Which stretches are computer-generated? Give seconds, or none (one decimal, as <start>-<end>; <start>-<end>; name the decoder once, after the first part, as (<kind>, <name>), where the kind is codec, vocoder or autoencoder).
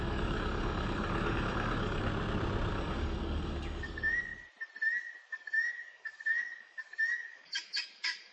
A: 0.0-2.1 (codec, DAC); 2.7-4.3; 5.3-8.3